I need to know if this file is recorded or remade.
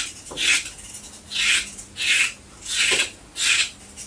recorded